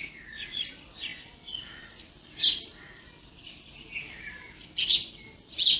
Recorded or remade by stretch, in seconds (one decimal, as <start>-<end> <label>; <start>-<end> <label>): 0.0-5.8 recorded